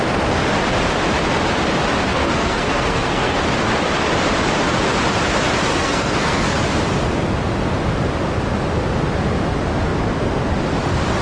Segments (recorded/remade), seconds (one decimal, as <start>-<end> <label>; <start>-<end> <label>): 0.0-2.1 recorded; 2.1-3.4 remade; 3.4-5.7 recorded; 5.7-6.6 remade; 6.6-11.2 recorded